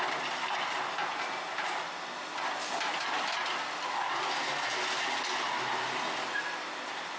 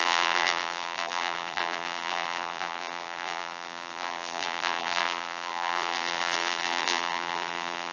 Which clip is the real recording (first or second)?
first